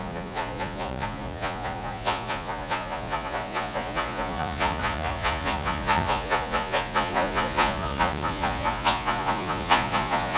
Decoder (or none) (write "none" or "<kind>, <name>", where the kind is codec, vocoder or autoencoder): vocoder, Vocos